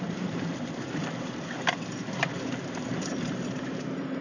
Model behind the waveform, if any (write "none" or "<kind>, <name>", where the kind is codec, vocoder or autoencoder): vocoder, BigVGAN v2